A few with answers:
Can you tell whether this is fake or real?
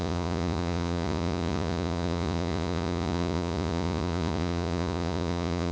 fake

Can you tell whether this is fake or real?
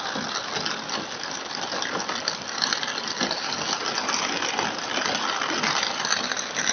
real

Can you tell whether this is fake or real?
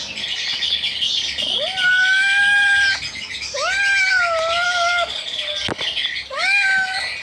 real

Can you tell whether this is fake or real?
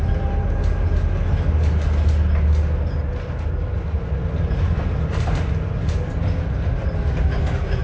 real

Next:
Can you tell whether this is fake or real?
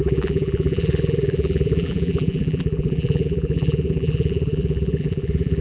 fake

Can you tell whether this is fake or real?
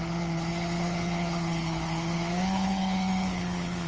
fake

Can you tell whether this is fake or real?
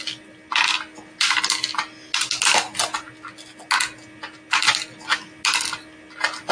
real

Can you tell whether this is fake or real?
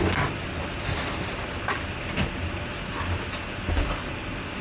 real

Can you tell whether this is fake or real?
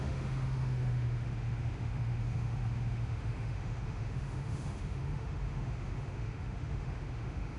fake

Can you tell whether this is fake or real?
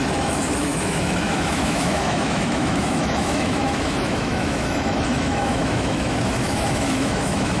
fake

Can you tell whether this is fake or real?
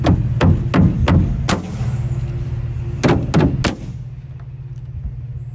real